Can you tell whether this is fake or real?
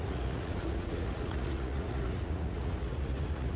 fake